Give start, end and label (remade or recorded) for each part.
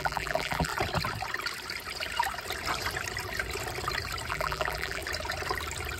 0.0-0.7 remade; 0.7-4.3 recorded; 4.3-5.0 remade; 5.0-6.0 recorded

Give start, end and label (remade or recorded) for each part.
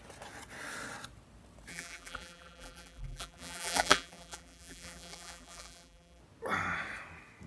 0.0-1.7 recorded; 1.7-6.2 remade; 6.2-7.5 recorded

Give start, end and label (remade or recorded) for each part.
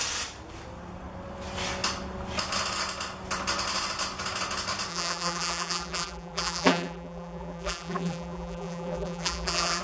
0.0-4.9 recorded; 4.9-9.8 remade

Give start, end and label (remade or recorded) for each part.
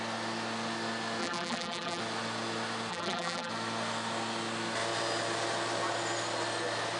0.0-1.2 recorded; 1.2-2.0 remade; 2.0-2.9 recorded; 2.9-3.5 remade; 3.5-7.0 recorded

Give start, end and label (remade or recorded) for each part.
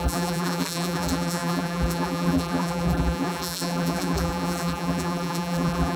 0.0-6.0 remade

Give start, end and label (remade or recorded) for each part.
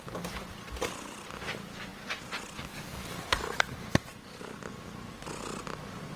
0.0-6.2 recorded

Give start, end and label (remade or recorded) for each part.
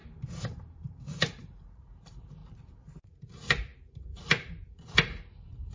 0.0-2.4 remade; 2.4-3.2 recorded; 3.2-5.7 remade